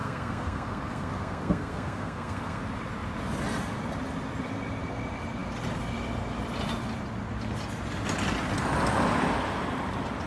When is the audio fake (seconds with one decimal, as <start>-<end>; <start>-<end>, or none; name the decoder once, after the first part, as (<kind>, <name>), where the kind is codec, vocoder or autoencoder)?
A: 0.0-2.6 (codec, SNAC)